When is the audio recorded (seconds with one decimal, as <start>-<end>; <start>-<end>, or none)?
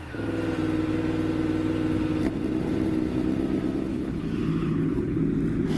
0.0-3.9; 5.2-5.8